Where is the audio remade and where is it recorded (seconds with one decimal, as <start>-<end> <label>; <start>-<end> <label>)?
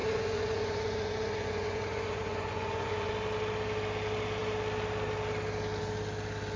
0.0-3.1 remade; 3.1-6.6 recorded